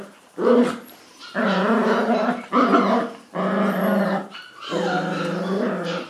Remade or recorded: recorded